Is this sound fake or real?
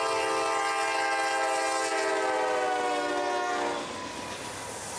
real